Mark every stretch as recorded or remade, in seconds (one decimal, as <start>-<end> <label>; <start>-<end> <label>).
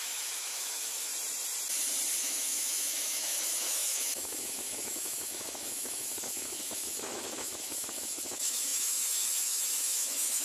0.0-1.1 remade; 1.1-2.2 recorded; 2.2-10.4 remade